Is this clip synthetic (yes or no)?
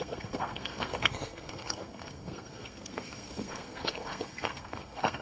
yes